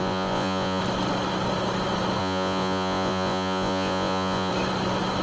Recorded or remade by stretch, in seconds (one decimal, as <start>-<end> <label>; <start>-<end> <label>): 0.0-0.8 remade; 0.8-2.2 recorded; 2.2-4.5 remade; 4.5-5.2 recorded

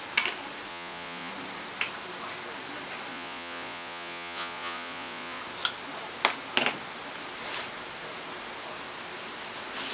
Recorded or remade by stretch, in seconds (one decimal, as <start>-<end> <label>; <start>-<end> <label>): 0.0-0.7 recorded; 0.7-1.3 remade; 1.3-3.1 recorded; 3.1-5.4 remade; 5.4-9.9 recorded

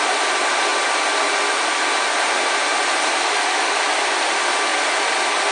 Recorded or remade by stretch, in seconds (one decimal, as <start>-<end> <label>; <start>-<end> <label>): 0.0-5.5 recorded